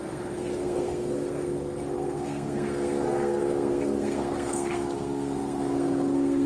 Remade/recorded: remade